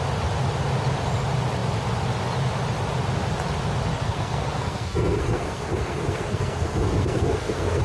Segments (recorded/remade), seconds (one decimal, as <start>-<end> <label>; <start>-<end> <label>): 0.0-3.9 recorded; 3.9-7.8 remade